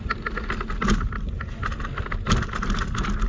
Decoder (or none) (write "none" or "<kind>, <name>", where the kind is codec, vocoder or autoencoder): none